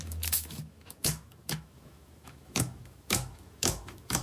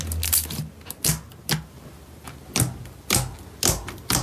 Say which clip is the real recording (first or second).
second